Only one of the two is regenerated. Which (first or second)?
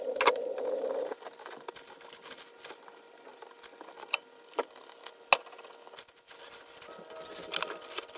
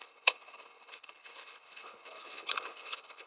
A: second